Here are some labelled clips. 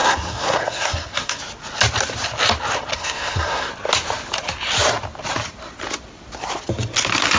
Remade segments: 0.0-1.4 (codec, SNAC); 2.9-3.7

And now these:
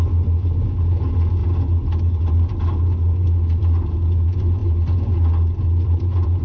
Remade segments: none